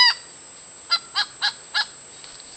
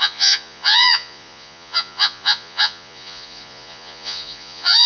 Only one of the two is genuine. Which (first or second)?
first